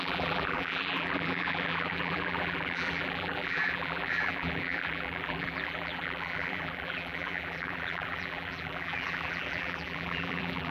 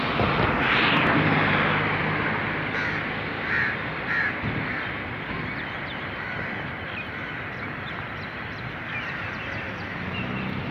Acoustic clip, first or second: second